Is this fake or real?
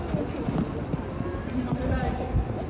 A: real